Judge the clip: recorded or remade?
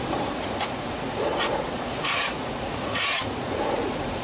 remade